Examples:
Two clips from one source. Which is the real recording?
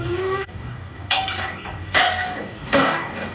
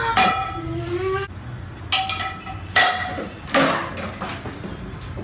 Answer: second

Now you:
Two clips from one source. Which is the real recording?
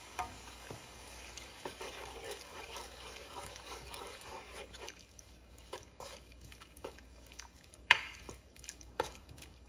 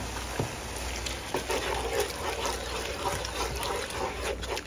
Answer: second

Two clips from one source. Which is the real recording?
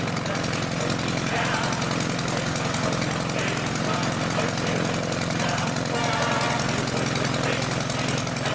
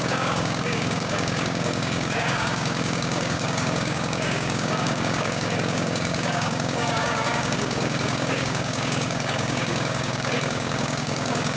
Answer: first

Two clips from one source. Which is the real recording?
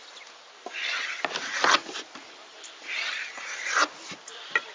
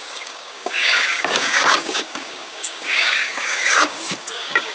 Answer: first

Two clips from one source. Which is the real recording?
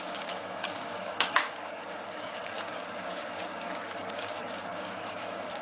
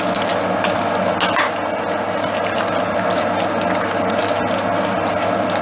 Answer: second